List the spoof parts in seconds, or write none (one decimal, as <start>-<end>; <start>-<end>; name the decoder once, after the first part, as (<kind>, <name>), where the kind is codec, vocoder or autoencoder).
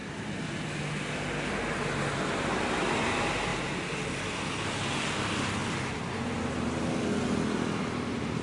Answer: none